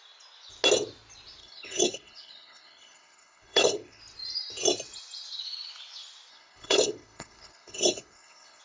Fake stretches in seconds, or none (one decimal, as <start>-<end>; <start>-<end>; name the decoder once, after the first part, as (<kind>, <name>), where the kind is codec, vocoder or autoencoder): 1.4-4.0 (codec, HILCodec); 6.3-8.6